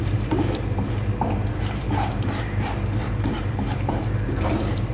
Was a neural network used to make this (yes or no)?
yes